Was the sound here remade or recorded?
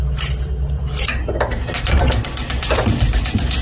recorded